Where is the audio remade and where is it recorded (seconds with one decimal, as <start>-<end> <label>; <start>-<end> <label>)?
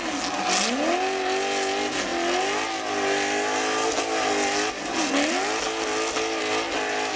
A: 0.0-7.2 recorded